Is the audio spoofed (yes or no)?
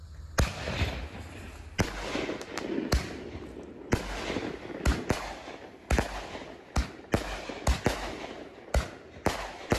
no